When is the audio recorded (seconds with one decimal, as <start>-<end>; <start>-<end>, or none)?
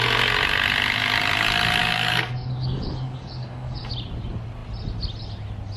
0.0-1.8; 3.9-5.8